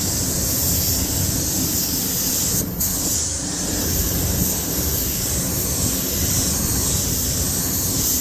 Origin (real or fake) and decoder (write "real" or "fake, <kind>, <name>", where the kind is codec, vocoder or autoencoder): real